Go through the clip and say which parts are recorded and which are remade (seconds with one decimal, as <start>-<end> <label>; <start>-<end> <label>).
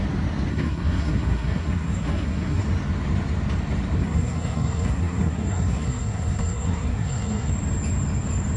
0.0-0.5 recorded; 0.5-2.6 remade; 2.6-4.0 recorded; 4.0-7.5 remade; 7.5-8.6 recorded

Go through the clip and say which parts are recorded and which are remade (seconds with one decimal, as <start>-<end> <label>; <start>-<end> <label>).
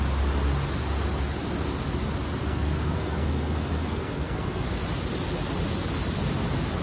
0.0-2.4 recorded; 2.4-4.7 remade; 4.7-6.8 recorded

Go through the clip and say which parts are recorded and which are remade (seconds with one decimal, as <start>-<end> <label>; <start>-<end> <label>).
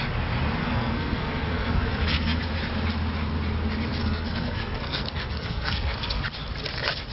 0.0-0.6 recorded; 0.6-2.4 remade; 2.4-4.0 recorded; 4.0-6.2 remade; 6.2-7.1 recorded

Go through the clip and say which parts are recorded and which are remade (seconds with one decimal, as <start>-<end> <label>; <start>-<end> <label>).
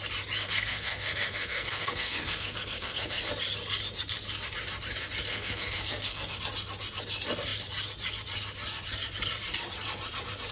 0.0-0.4 recorded; 0.4-3.2 remade; 3.2-5.3 recorded; 5.3-6.4 remade; 6.4-10.5 recorded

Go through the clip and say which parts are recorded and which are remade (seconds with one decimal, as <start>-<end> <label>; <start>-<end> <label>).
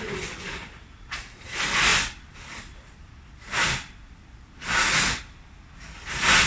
0.0-6.5 recorded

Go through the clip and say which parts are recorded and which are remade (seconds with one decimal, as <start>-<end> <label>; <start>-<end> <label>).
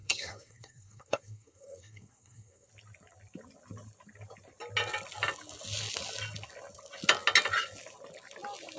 0.0-2.7 remade; 2.7-8.8 recorded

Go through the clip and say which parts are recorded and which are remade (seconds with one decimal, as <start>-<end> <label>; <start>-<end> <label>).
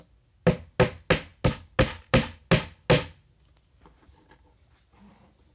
0.0-5.5 recorded